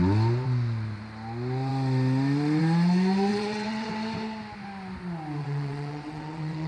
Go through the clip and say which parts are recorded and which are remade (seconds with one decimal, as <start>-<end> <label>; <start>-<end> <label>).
0.0-3.3 recorded; 3.3-3.9 remade; 3.9-5.4 recorded; 5.4-6.7 remade